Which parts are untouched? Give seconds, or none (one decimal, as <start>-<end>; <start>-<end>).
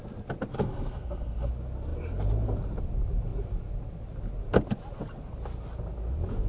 0.0-0.5; 1.5-6.5